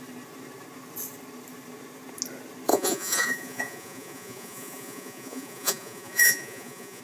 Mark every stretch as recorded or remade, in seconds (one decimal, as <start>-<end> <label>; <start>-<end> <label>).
0.0-2.7 recorded; 2.7-7.0 remade